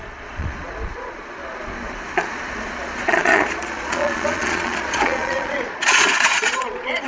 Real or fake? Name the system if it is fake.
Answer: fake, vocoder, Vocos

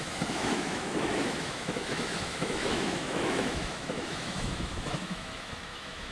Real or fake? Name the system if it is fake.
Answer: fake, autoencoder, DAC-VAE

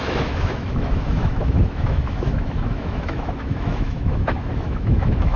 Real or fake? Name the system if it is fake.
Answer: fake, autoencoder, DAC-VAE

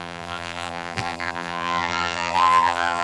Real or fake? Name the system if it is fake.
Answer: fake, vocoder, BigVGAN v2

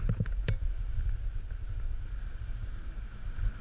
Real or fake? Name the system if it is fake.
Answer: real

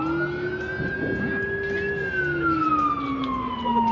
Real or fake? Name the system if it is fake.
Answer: real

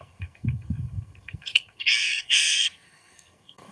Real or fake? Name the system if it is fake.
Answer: fake, codec, SNAC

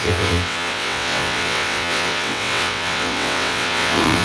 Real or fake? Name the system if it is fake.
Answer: fake, vocoder, WaveNeXt